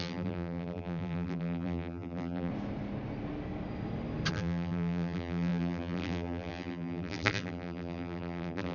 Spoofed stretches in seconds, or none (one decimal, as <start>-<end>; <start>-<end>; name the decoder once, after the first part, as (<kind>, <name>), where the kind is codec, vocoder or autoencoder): 0.0-2.5 (vocoder, BigVGAN v2); 4.3-8.7